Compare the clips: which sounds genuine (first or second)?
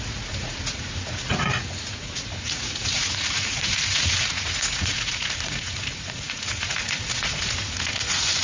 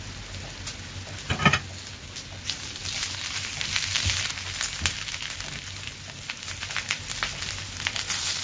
second